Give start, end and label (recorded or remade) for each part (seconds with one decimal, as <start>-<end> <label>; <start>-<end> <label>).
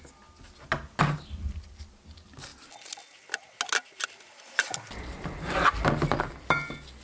0.0-7.0 recorded